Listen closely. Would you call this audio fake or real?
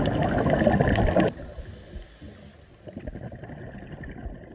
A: real